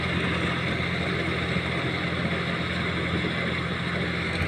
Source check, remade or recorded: recorded